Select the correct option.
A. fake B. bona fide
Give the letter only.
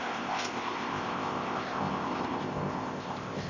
A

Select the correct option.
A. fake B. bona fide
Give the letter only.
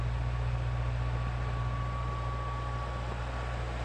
B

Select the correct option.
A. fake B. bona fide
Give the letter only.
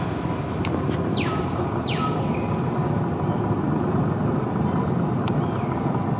B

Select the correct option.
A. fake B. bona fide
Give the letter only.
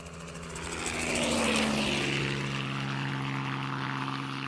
B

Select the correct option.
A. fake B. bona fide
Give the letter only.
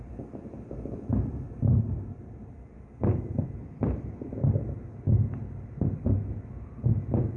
A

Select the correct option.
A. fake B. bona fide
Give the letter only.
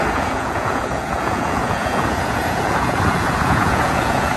A